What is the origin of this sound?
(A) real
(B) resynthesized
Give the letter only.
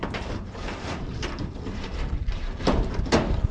B